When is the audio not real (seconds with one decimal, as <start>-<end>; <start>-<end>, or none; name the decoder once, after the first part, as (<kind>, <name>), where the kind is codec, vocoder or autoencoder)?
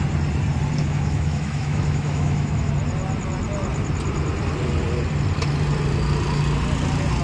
0.8-2.7 (autoencoder, DAC-VAE)